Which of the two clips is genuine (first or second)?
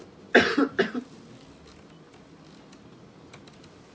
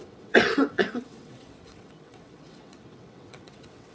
first